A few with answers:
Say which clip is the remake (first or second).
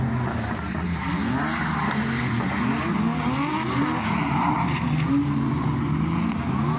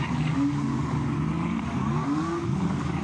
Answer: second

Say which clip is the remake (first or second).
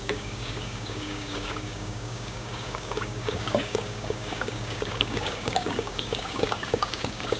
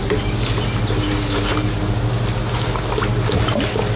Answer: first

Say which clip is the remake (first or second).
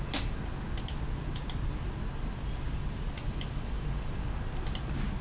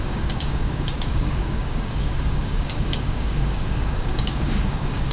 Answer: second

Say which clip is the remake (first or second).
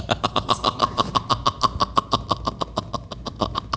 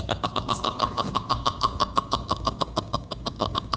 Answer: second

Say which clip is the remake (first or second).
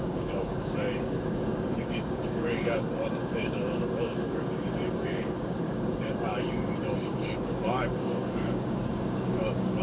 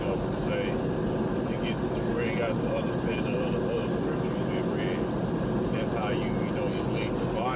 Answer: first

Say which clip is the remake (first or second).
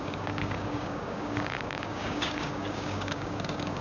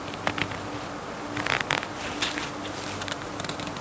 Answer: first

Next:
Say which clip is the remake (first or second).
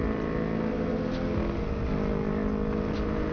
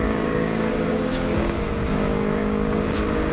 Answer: second